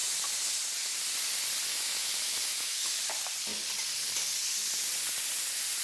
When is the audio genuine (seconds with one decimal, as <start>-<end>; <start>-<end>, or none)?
0.0-1.7; 3.0-5.8

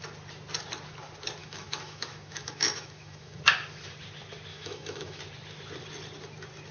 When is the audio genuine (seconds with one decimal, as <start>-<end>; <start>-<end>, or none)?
0.0-1.4; 3.4-4.5; 5.2-6.7

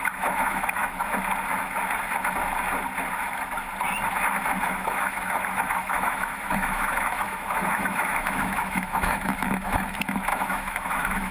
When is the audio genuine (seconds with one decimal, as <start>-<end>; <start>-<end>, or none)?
1.0-4.6

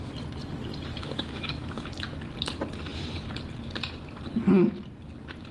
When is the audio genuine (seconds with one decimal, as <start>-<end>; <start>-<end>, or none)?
0.0-1.0; 1.9-5.5

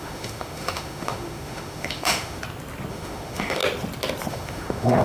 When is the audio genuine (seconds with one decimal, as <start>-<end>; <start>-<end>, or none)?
2.4-2.9; 3.6-4.3

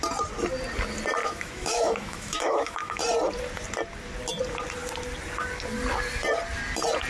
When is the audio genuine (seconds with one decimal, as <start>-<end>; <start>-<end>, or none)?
0.0-1.2; 3.0-7.1